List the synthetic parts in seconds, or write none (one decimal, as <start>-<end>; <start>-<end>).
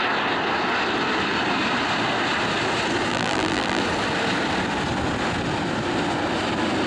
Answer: 3.1-3.8